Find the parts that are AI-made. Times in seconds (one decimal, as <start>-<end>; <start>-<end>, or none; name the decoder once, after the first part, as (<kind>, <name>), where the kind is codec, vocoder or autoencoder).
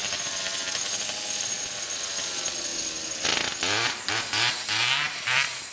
none